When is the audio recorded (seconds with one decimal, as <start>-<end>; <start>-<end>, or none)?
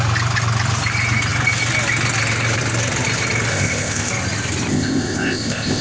0.0-3.5; 4.1-4.7